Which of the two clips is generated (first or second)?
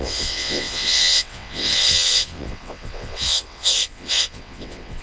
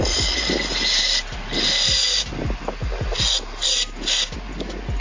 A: first